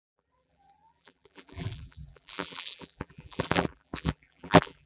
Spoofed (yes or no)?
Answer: yes